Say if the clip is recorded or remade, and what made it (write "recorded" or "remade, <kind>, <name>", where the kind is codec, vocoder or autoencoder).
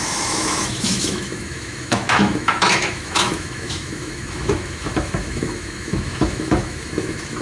remade, autoencoder, DAC-VAE